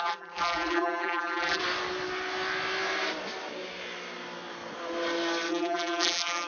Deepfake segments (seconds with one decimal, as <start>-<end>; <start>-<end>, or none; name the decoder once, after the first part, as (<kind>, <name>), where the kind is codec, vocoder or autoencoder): 0.0-1.6 (vocoder, BigVGAN v2); 5.5-6.5